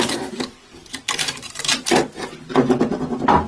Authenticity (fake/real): real